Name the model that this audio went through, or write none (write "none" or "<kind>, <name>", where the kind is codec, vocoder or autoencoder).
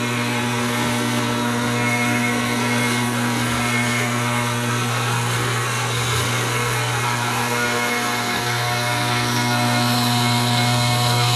codec, SNAC